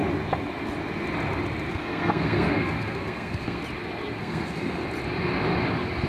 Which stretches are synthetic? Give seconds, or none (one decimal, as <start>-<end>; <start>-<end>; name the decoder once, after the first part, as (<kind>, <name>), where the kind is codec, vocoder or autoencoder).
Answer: 1.7-3.6 (codec, SNAC); 4.2-4.8